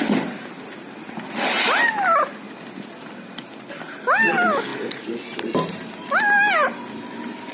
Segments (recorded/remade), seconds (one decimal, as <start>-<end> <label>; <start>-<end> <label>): 0.0-7.5 recorded